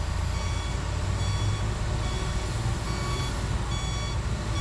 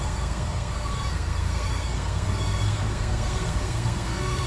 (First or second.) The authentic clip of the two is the first